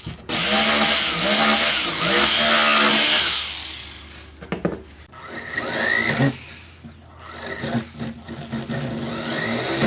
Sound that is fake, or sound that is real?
real